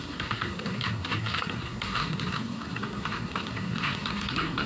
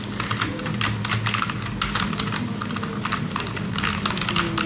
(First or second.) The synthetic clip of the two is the first